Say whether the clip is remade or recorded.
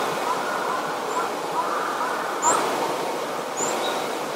recorded